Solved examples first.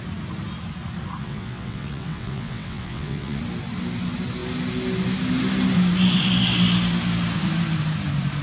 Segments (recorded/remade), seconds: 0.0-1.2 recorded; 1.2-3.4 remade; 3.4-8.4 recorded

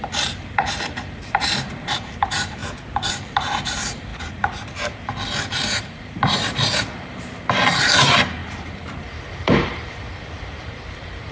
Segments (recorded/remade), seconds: 0.0-2.6 remade; 2.6-3.1 recorded; 3.1-11.3 remade

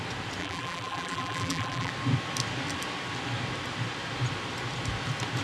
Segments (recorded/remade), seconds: 0.0-0.4 recorded; 0.4-1.9 remade; 1.9-5.4 recorded

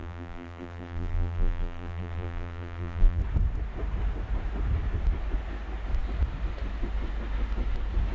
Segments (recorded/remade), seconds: 0.0-3.2 remade; 3.2-8.1 recorded

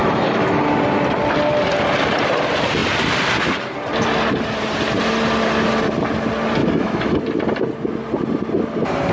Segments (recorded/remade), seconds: 0.0-0.6 remade; 0.6-6.6 recorded; 6.6-7.2 remade; 7.2-9.1 recorded

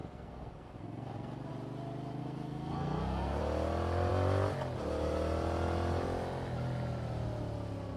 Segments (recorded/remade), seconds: 0.0-1.5 remade; 1.5-2.2 recorded; 2.2-3.4 remade; 3.4-8.0 recorded

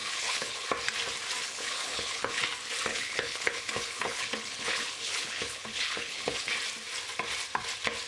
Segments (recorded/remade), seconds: 0.0-0.7 remade; 0.7-1.4 recorded; 1.4-2.4 remade; 2.4-2.9 recorded; 2.9-6.5 remade; 6.5-8.1 recorded